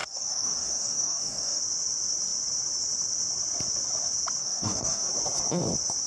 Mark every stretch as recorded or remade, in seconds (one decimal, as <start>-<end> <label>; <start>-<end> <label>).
0.0-1.6 remade; 1.6-4.4 recorded; 4.4-5.1 remade; 5.1-6.1 recorded